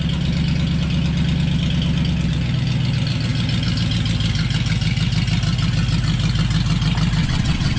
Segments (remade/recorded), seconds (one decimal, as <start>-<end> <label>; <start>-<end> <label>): 0.0-7.2 recorded; 7.2-7.8 remade